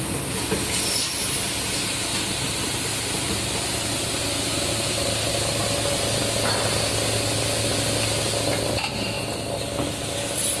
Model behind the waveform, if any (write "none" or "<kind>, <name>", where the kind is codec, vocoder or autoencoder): none